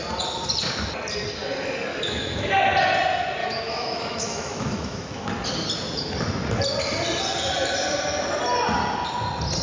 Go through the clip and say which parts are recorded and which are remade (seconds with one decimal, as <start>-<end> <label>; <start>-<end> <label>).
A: 0.0-1.9 recorded; 1.9-2.5 remade; 2.5-3.4 recorded; 3.4-5.3 remade; 5.3-9.6 recorded